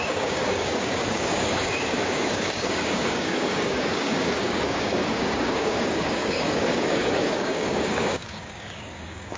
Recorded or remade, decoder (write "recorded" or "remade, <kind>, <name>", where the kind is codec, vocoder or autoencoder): remade, codec, DAC